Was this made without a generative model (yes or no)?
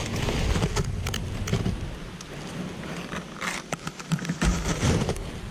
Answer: no